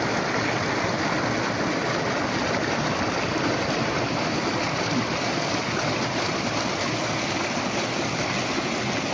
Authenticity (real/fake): real